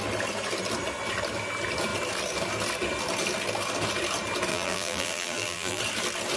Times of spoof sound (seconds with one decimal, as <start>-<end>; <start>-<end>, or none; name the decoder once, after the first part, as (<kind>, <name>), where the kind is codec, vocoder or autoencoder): 4.5-5.8 (vocoder, BigVGAN v2)